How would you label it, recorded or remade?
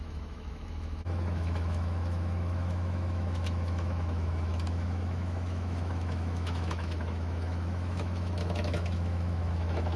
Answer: remade